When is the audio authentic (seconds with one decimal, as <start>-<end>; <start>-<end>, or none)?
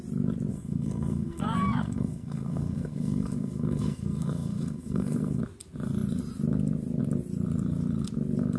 0.0-0.5; 5.4-8.6